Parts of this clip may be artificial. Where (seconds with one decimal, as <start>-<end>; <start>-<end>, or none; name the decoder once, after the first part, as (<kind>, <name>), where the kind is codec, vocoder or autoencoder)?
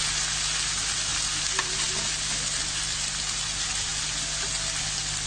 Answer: none